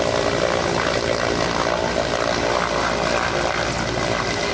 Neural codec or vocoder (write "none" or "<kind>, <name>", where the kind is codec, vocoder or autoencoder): none